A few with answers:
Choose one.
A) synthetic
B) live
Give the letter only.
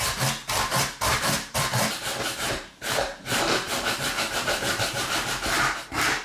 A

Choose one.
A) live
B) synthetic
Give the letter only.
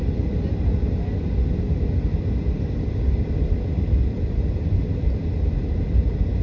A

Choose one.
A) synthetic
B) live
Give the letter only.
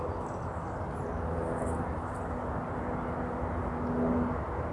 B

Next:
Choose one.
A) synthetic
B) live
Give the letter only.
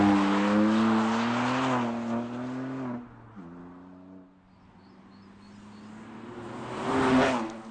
B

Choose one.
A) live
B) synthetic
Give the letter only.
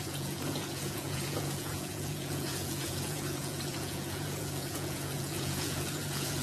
B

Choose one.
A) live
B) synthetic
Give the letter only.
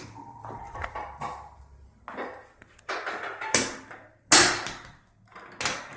A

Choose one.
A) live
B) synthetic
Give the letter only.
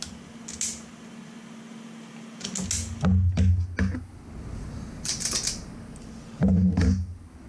A